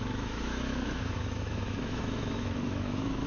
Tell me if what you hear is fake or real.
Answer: fake